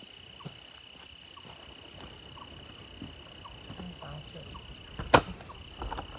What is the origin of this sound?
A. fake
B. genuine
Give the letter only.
B